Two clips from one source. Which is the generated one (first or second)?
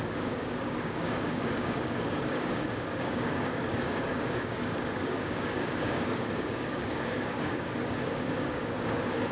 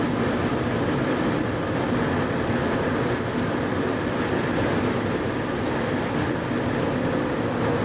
first